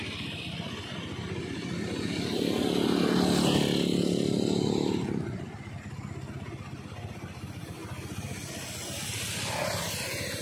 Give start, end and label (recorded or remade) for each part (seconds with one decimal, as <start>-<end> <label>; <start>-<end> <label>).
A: 0.0-10.4 recorded